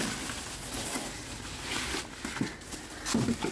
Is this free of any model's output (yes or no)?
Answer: yes